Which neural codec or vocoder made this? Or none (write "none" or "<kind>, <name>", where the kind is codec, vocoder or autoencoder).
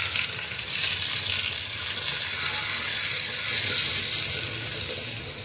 none